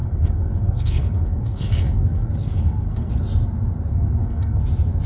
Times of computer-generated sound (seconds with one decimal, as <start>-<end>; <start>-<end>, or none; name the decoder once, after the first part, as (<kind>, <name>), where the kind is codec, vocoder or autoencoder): 0.0-3.1 (codec, SNAC); 3.9-4.6